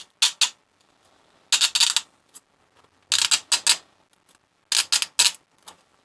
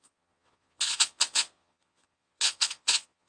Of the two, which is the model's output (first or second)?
second